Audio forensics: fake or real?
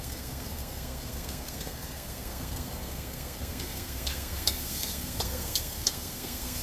fake